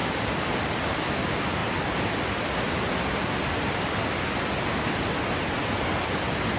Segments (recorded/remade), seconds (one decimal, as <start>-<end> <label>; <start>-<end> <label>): 0.0-6.6 recorded